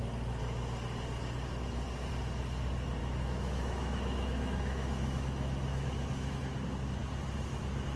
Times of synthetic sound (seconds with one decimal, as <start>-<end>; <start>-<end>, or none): 3.0-6.4